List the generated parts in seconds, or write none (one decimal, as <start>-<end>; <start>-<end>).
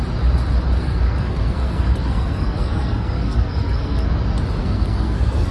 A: 0.8-4.1; 4.6-5.5